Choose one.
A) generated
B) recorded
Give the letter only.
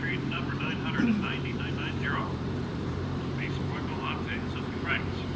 A